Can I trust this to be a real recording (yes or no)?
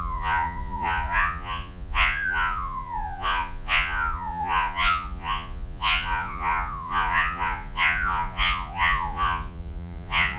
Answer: no